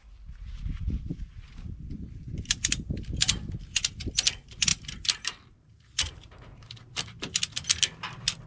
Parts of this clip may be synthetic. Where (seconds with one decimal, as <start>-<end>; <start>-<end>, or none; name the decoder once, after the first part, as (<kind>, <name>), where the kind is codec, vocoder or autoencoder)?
4.7-6.7 (vocoder, BigVGAN v2)

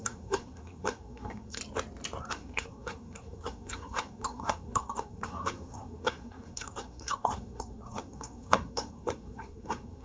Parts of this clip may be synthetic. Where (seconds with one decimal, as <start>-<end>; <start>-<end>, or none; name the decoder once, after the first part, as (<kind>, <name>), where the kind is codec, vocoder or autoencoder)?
0.0-1.6 (codec, SNAC); 2.2-10.0